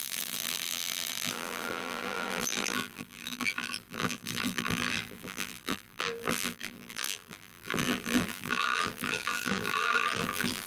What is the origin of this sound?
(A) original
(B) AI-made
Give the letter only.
B